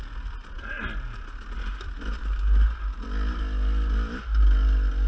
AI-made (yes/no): no